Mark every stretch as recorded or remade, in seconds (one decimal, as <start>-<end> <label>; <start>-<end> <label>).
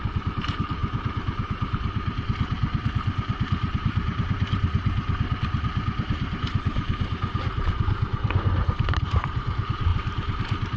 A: 0.0-9.9 remade; 9.9-10.8 recorded